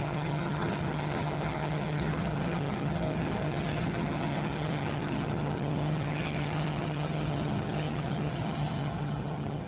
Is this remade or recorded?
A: remade